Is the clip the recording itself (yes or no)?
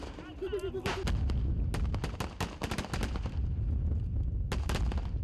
yes